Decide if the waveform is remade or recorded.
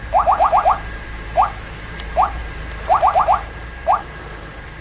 remade